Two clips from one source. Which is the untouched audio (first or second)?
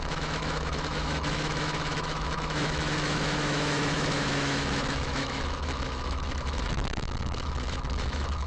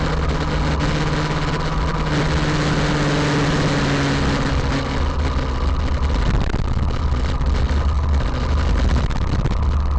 second